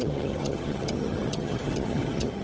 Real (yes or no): no